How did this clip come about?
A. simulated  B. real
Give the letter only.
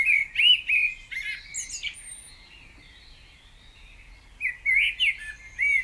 B